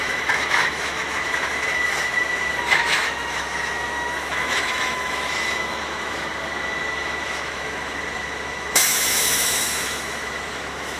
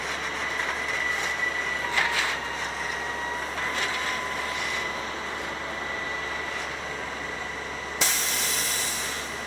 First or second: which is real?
second